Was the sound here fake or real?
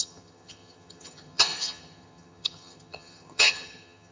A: fake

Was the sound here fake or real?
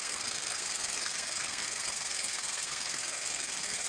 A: fake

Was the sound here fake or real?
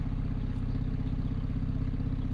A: real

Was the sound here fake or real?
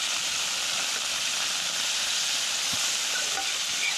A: real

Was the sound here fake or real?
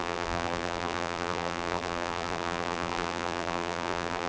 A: fake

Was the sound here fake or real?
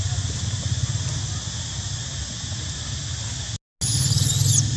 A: real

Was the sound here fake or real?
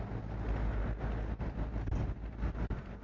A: real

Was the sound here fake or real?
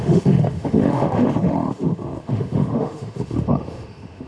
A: fake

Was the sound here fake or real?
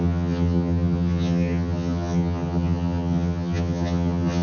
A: fake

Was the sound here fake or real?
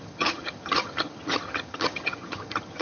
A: fake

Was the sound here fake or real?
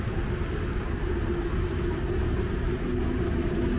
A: real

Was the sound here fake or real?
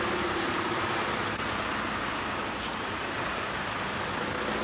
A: real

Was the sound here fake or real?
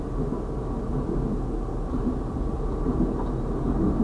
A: real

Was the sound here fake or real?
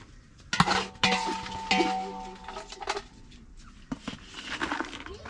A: real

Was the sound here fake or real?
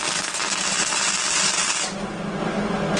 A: real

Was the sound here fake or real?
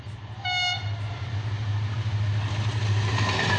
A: real